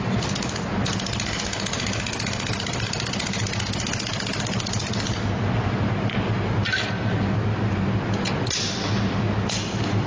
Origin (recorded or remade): recorded